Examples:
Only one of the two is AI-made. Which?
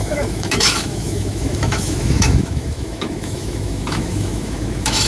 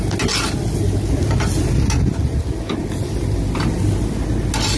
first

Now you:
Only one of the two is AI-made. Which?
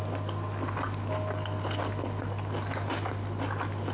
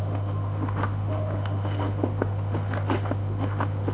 second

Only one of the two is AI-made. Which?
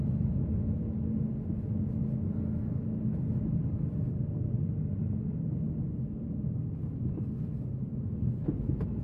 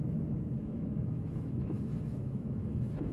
second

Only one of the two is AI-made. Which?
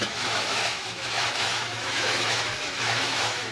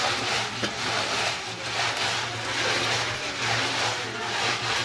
first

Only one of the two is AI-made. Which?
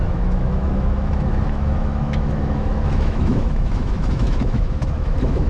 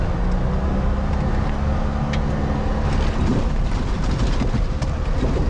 first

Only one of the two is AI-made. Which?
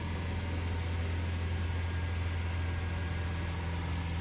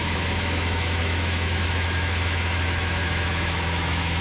second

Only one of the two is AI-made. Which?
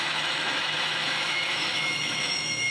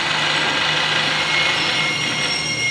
first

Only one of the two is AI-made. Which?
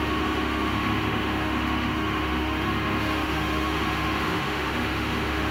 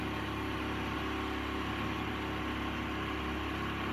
first